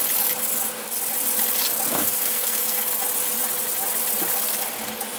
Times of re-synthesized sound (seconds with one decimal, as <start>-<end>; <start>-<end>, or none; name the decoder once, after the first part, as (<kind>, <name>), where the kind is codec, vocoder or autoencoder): 1.9-3.0 (codec, SNAC)